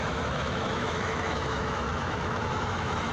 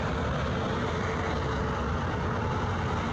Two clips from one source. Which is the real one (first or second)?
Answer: second